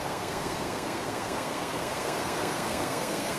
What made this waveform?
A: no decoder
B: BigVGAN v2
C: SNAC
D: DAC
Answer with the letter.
C